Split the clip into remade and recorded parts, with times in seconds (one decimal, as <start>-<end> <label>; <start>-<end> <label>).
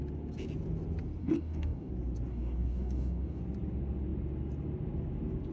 0.0-1.2 recorded; 1.2-1.9 remade; 1.9-2.3 recorded; 2.3-3.4 remade; 3.4-5.5 recorded